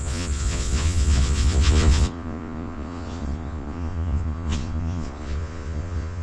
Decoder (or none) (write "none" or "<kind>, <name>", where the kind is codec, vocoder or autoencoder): vocoder, Vocos